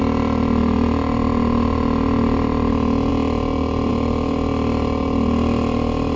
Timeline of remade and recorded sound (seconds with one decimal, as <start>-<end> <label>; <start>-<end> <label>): 0.0-6.2 recorded